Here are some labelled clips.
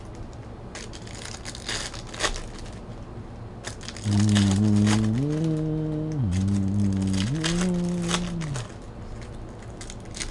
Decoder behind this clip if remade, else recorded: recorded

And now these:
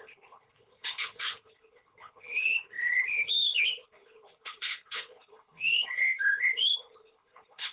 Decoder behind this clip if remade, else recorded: remade, codec, HILCodec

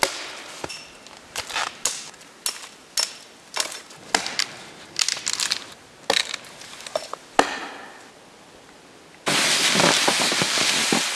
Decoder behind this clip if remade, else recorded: recorded